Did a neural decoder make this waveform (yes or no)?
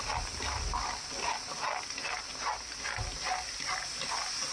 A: no